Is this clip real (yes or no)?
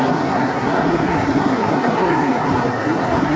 no